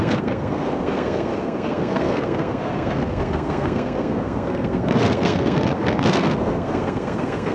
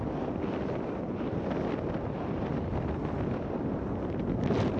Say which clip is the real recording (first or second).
second